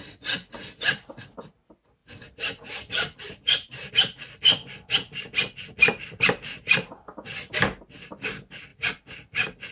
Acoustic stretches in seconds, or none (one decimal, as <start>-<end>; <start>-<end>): 0.0-2.0; 3.9-9.7